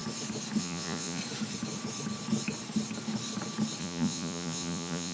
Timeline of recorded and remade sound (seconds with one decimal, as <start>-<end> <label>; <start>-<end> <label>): 0.0-0.6 recorded; 0.6-1.2 remade; 1.2-3.8 recorded; 3.8-5.1 remade

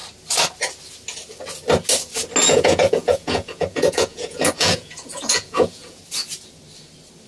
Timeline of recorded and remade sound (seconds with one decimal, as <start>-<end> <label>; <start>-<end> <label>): 0.0-2.4 recorded; 2.4-6.0 remade; 6.0-7.3 recorded

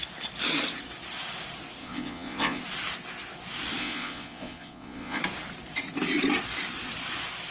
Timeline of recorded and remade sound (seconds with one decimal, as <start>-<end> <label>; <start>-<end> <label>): 0.0-1.8 recorded; 1.8-2.6 remade; 2.6-3.8 recorded; 3.8-5.2 remade; 5.2-7.5 recorded